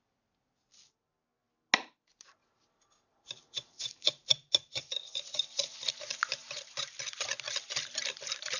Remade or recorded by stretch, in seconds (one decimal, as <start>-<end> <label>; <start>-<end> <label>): 0.0-2.1 recorded; 2.1-4.3 remade; 4.3-6.4 recorded; 6.4-7.1 remade; 7.1-8.6 recorded